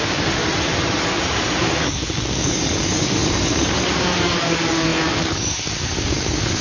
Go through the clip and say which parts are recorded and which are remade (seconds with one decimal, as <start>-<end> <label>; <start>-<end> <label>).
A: 0.0-0.4 remade; 0.4-1.6 recorded; 1.6-6.6 remade